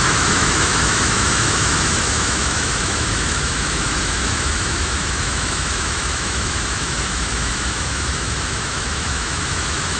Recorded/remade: remade